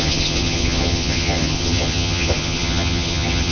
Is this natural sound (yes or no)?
no